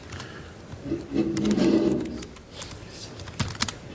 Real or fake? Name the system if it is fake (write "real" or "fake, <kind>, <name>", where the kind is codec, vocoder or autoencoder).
real